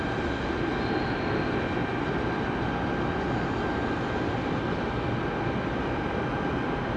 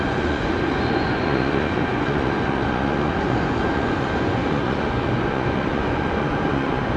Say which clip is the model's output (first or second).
second